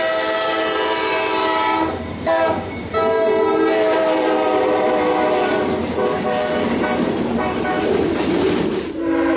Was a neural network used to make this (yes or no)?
yes